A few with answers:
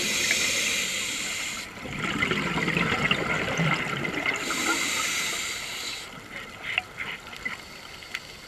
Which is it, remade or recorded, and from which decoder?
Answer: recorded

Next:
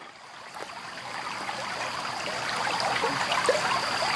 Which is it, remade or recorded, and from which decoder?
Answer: recorded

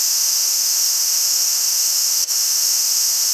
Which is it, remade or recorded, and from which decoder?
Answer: remade, autoencoder, DAC-VAE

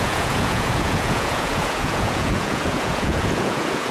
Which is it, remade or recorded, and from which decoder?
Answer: remade, vocoder, Vocos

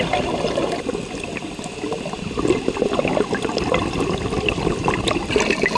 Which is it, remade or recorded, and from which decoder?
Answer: recorded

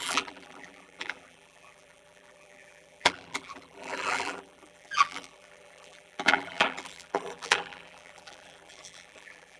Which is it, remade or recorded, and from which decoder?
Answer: remade, vocoder, BigVGAN v2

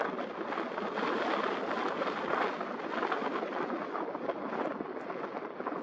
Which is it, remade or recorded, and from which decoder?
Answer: recorded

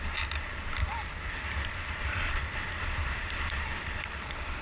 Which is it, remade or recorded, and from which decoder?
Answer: recorded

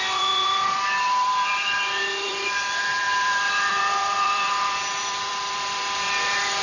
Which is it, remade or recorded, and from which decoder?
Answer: remade, vocoder, BigVGAN v2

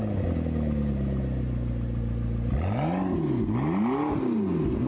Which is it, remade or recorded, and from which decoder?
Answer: recorded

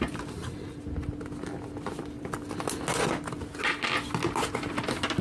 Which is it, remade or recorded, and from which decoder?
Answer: recorded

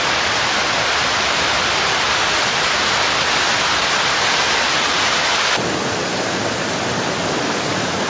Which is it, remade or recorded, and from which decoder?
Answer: recorded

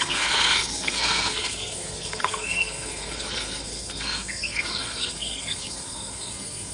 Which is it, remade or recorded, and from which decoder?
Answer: remade, codec, SNAC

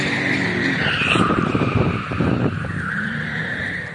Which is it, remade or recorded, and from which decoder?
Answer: remade, vocoder, BigVGAN v2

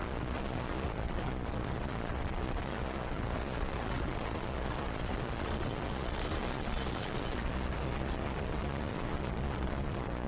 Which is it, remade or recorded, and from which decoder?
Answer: remade, vocoder, Vocos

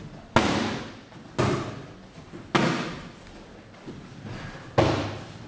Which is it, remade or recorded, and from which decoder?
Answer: recorded